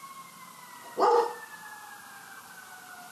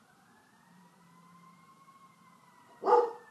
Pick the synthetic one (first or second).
second